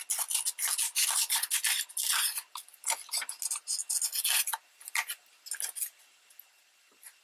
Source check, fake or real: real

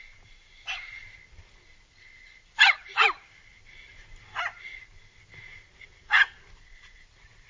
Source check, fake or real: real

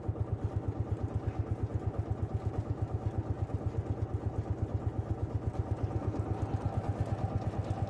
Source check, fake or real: real